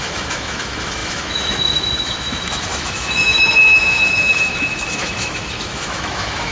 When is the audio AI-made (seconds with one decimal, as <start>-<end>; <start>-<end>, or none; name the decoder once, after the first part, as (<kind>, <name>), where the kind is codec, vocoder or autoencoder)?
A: 0.0-6.5 (autoencoder, DAC-VAE)